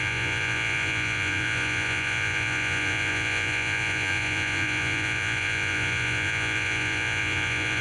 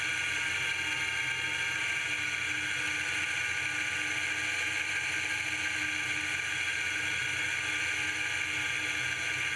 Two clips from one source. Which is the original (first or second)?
second